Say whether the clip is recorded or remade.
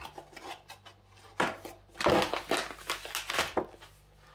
recorded